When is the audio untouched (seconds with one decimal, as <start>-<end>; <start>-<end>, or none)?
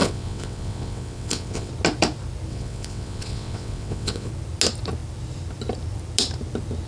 1.7-2.5; 4.3-6.9